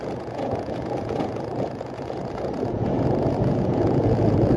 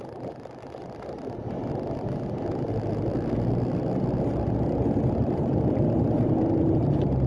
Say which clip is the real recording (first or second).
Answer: second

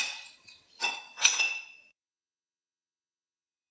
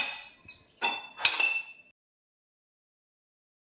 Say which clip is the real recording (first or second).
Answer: second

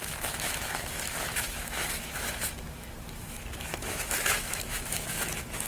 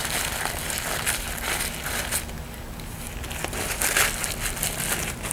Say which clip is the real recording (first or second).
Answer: second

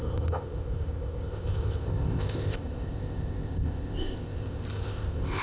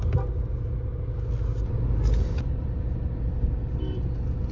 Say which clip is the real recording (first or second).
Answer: second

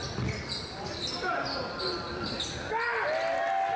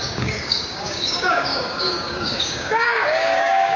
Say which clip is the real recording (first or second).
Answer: first